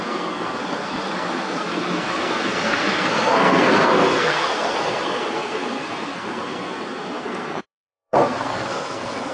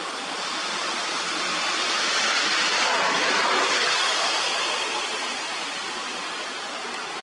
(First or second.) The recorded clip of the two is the second